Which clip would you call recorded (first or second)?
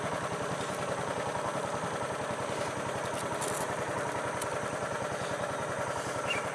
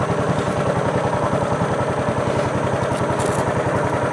second